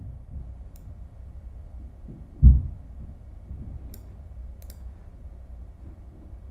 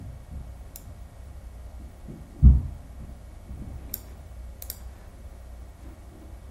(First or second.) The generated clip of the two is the first